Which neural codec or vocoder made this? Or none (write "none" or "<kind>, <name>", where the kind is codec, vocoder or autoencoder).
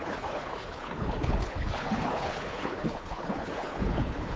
codec, HILCodec